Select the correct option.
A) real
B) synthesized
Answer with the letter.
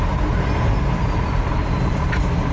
B